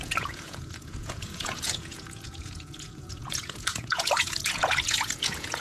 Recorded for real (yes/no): no